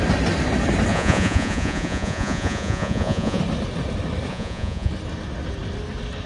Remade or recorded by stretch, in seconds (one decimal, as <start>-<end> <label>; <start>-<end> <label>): 0.0-0.9 recorded; 0.9-3.4 remade; 3.4-4.3 recorded; 4.3-4.9 remade; 4.9-6.3 recorded